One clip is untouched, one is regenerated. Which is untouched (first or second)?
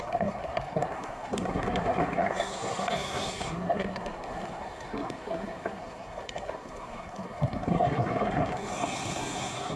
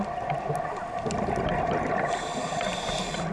second